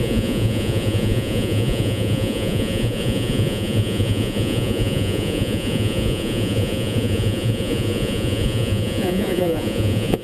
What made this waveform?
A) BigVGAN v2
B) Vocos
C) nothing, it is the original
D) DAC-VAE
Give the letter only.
B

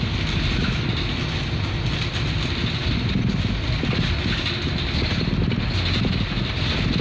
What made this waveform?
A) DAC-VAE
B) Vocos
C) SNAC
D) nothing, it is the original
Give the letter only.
D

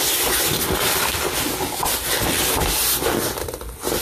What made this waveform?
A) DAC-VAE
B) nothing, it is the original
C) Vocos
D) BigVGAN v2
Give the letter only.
B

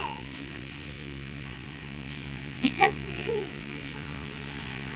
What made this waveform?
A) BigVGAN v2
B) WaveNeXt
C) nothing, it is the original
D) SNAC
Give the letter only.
B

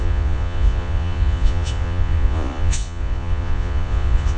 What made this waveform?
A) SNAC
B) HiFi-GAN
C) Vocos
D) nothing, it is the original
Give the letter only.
C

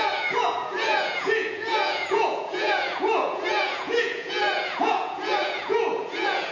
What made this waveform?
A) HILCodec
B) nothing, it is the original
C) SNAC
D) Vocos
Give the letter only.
D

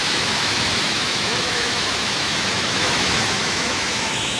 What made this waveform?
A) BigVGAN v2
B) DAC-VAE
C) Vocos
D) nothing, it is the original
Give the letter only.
B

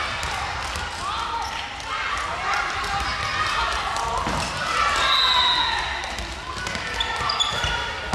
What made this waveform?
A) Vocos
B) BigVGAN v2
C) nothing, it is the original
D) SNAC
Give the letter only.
C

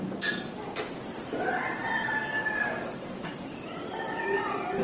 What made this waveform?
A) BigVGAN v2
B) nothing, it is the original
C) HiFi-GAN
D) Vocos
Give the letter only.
A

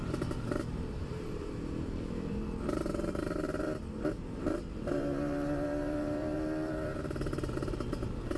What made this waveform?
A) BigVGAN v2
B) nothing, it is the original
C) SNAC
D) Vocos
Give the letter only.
A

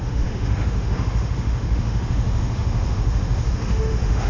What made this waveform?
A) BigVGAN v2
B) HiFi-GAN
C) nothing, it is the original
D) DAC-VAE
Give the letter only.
D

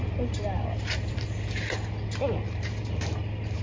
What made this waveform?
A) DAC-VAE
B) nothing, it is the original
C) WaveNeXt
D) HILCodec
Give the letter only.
B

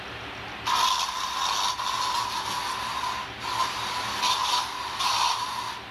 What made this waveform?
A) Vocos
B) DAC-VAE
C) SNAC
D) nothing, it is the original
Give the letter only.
D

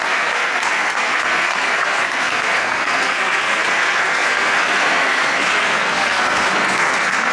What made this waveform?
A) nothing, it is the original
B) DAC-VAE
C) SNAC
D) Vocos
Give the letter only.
C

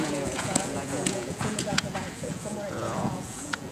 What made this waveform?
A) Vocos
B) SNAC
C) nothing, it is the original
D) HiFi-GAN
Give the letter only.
A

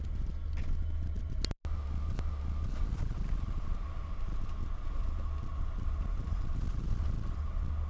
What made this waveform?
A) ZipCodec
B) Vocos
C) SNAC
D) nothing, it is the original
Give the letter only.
D